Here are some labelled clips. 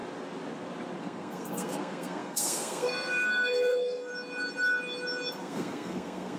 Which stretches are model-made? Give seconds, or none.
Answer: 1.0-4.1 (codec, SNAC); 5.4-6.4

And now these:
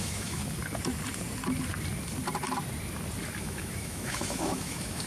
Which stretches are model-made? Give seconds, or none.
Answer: 0.0-0.4 (autoencoder, DAC-VAE); 3.4-5.1

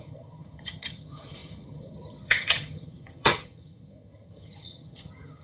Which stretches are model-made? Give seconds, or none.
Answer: 0.0-5.4 (vocoder, HiFi-GAN)

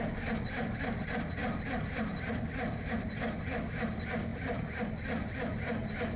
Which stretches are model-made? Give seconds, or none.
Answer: 1.4-2.3 (vocoder, BigVGAN v2); 4.3-4.9

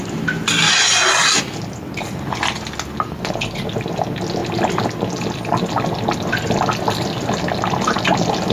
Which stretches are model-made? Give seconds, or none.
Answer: none